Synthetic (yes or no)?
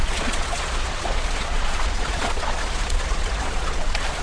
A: yes